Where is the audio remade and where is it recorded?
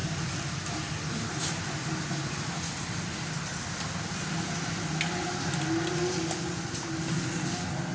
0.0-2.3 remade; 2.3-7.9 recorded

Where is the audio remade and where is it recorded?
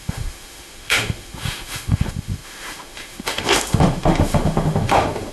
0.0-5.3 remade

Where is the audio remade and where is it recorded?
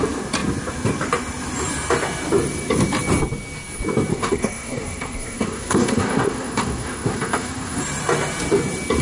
0.0-4.1 recorded; 4.1-7.8 remade; 7.8-9.0 recorded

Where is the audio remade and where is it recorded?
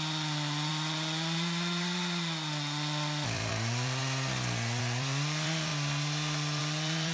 0.0-4.0 remade; 4.0-4.8 recorded; 4.8-5.7 remade; 5.7-6.6 recorded; 6.6-7.1 remade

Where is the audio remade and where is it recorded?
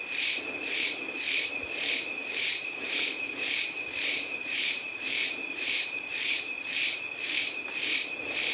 0.0-2.2 recorded; 2.2-7.0 remade; 7.0-8.5 recorded